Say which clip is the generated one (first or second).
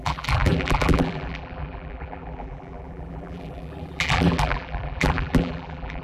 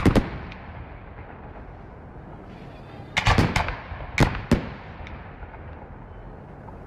first